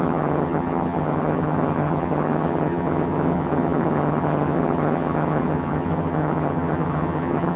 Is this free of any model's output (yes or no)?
no